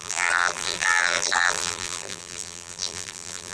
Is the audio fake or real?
fake